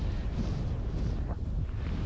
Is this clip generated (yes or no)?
no